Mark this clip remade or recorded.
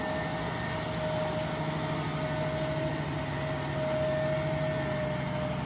recorded